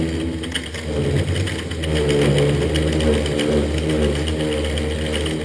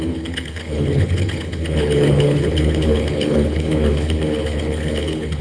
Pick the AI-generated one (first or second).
second